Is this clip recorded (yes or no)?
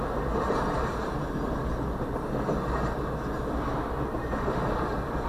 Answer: yes